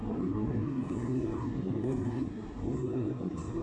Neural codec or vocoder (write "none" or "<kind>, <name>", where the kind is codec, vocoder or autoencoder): codec, SNAC